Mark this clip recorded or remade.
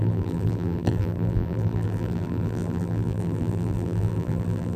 remade